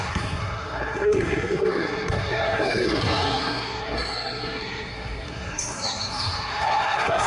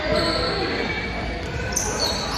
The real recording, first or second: second